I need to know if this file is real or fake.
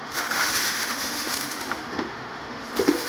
fake